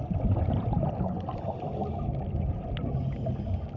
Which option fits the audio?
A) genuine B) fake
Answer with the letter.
A